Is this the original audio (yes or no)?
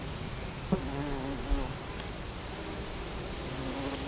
yes